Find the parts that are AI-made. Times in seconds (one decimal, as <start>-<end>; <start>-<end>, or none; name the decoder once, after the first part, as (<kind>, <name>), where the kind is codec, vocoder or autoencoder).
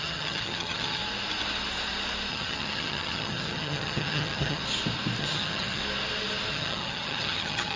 0.0-1.0 (vocoder, HiFi-GAN); 2.3-4.6; 5.2-5.8; 6.5-7.8